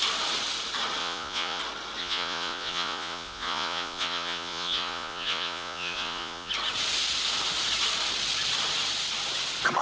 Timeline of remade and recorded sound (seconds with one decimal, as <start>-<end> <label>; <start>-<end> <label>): 0.0-1.0 recorded; 1.0-1.6 remade; 1.6-2.0 recorded; 2.0-6.5 remade; 6.5-9.8 recorded